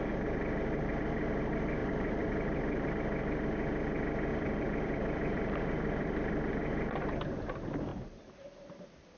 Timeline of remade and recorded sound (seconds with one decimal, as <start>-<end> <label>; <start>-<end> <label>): 0.0-1.8 recorded; 1.8-2.9 remade; 2.9-4.3 recorded; 4.3-6.5 remade; 6.5-7.9 recorded; 7.9-9.2 remade